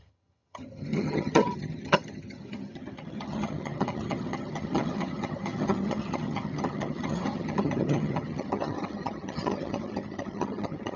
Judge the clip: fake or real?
fake